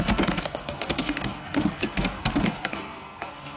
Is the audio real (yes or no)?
no